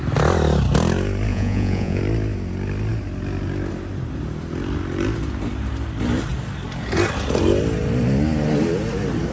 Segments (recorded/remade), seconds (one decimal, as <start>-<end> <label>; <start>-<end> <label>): 0.0-1.3 recorded; 1.3-2.0 remade; 2.0-9.3 recorded